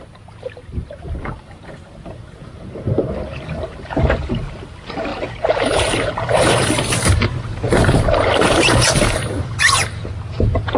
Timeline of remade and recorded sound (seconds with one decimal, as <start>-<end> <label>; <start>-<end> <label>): 0.0-0.7 recorded; 0.7-4.5 remade; 4.5-5.1 recorded; 5.1-9.6 remade; 9.6-10.8 recorded